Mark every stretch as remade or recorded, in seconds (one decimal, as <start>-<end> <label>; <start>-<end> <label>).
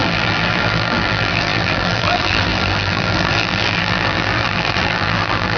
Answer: 0.0-5.6 remade